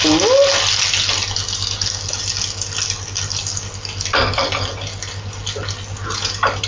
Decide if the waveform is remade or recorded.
recorded